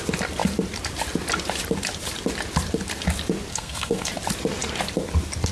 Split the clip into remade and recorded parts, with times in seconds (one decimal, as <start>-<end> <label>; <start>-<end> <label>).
0.0-3.5 recorded; 3.5-4.1 remade; 4.1-5.5 recorded